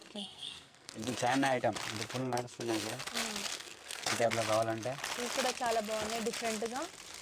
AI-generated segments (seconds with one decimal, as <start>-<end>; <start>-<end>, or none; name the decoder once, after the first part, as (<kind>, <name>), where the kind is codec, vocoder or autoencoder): 0.0-1.6 (codec, SNAC); 2.2-3.0; 3.5-4.3